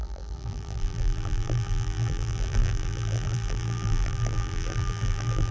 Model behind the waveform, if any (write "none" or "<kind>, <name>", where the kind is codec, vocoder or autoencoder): vocoder, BigVGAN v2